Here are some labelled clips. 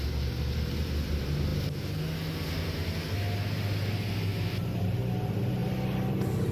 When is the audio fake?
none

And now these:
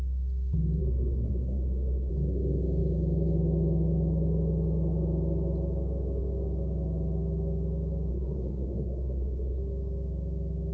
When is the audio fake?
0.8-2.1; 8.1-9.6

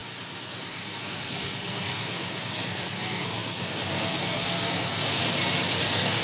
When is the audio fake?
0.6-5.2; 5.8-6.2

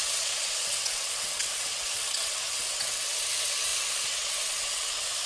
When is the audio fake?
0.0-5.3

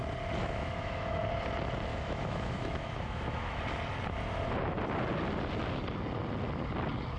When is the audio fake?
0.4-1.2; 1.9-3.6